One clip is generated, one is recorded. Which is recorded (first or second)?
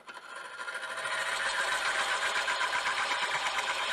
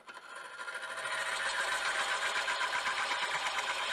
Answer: second